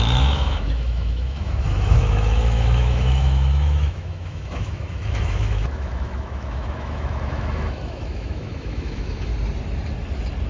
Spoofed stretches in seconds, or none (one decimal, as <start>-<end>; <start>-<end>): 0.0-9.3